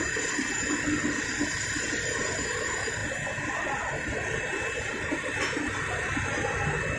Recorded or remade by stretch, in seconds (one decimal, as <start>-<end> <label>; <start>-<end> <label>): 0.0-7.0 recorded